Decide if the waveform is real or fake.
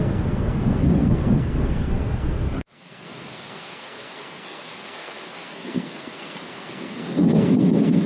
fake